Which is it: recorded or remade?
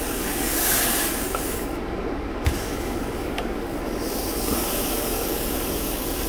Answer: remade